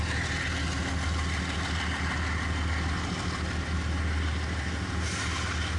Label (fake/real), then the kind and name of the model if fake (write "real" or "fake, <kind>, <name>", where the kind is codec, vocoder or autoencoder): real